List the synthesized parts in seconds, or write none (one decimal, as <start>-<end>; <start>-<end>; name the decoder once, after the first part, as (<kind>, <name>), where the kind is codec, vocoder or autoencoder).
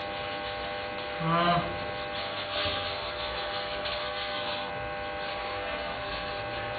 2.2-4.7 (codec, SNAC); 5.3-6.3